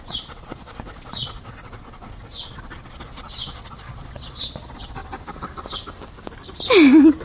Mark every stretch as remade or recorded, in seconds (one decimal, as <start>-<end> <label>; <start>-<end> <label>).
0.0-5.0 remade; 5.0-7.2 recorded